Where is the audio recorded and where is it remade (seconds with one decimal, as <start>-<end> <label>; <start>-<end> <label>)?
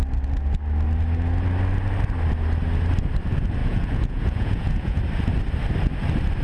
0.0-3.6 recorded; 3.6-5.0 remade; 5.0-6.4 recorded